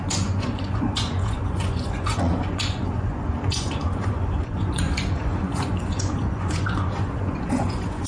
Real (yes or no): no